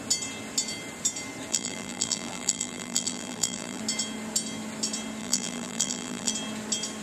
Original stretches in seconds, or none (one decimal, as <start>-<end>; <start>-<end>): 0.0-1.5; 3.8-5.2; 6.3-7.0